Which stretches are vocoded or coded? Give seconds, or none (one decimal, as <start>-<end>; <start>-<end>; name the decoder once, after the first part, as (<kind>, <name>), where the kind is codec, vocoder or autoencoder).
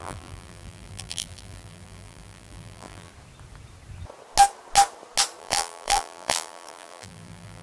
0.0-3.1 (vocoder, BigVGAN v2); 5.4-7.6